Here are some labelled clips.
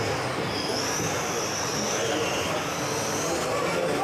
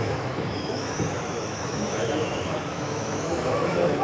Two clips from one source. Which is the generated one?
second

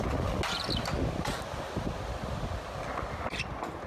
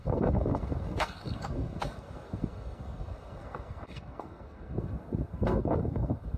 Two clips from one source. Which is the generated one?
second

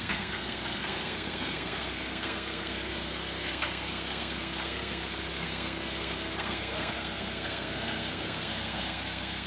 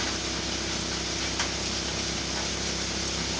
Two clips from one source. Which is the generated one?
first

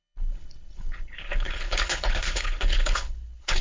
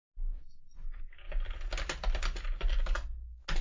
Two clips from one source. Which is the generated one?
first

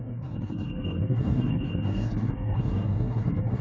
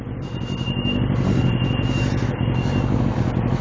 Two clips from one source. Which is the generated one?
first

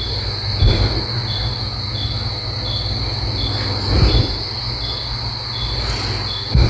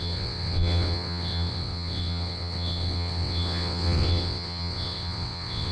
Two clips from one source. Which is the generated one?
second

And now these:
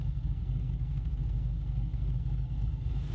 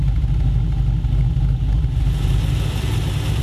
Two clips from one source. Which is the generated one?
first